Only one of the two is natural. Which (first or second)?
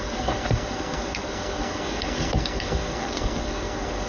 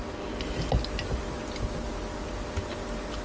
second